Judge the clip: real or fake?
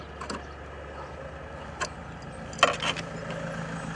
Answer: real